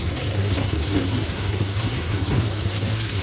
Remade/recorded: remade